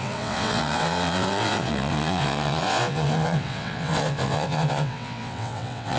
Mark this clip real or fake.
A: fake